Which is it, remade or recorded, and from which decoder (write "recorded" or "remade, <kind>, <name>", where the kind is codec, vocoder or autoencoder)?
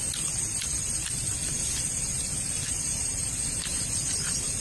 recorded